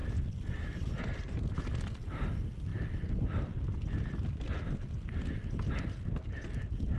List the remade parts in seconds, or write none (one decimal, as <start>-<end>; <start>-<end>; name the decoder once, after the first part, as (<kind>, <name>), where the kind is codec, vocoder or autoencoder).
0.0-1.0 (vocoder, BigVGAN v2); 2.7-3.4